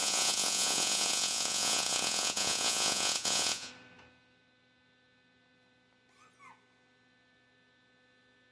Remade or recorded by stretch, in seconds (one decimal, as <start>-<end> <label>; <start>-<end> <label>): 0.0-3.7 remade; 3.7-8.5 recorded